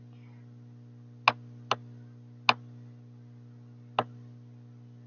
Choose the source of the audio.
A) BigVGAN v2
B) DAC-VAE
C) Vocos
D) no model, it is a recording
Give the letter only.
D